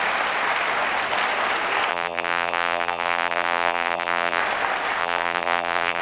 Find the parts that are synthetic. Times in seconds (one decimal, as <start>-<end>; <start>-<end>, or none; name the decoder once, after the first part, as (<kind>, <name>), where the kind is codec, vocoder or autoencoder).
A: 1.9-4.4 (vocoder, BigVGAN v2); 5.0-6.0